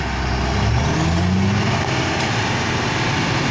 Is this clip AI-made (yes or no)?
no